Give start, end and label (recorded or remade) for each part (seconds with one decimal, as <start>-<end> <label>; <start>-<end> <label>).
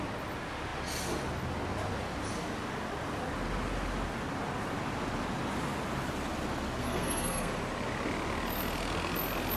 0.0-6.8 recorded; 6.8-7.5 remade; 7.5-9.6 recorded